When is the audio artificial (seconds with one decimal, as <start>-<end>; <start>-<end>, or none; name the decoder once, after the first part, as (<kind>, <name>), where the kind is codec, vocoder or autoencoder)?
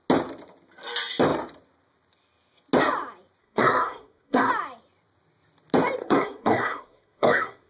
3.4-4.5 (codec, SNAC); 6.0-7.7